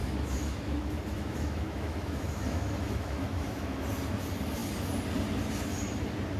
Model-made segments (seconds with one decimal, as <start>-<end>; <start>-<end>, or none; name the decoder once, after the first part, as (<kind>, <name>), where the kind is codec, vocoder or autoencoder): 0.0-3.8 (autoencoder, DAC-VAE)